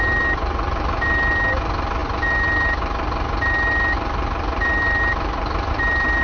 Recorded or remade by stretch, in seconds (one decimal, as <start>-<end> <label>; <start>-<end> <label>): 0.0-6.2 recorded